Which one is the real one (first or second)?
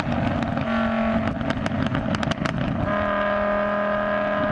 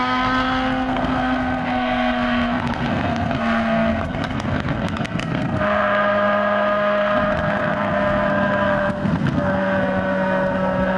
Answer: first